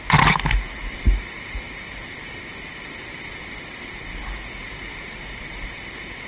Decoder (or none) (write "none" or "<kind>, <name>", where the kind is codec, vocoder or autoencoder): none